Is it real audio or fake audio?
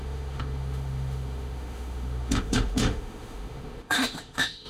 fake